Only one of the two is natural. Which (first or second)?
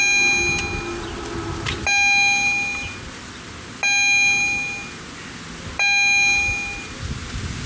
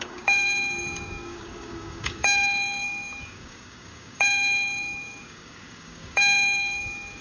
first